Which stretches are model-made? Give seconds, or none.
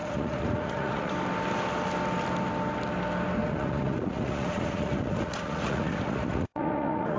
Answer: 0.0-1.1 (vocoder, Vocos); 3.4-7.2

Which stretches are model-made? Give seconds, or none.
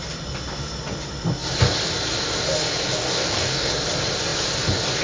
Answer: 3.0-3.7 (codec, DAC)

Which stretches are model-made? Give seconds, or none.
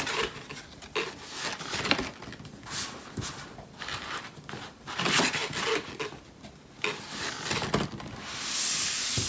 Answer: none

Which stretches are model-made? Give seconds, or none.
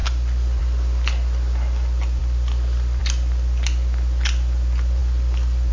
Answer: 0.0-0.6 (vocoder, BigVGAN v2); 5.0-5.7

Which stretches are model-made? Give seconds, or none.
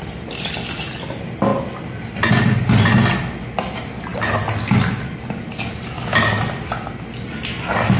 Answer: none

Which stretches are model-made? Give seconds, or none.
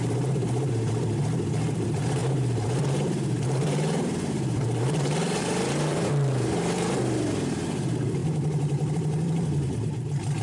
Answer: 0.0-10.4 (vocoder, BigVGAN v2)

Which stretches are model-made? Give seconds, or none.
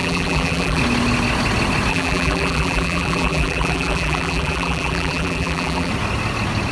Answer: 0.0-0.8 (vocoder, BigVGAN v2); 1.9-5.9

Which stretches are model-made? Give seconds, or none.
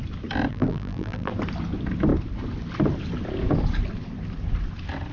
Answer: 0.5-1.3 (vocoder, BigVGAN v2)